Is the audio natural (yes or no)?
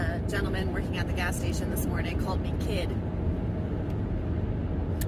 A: yes